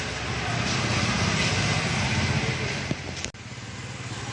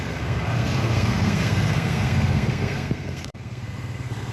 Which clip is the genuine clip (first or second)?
first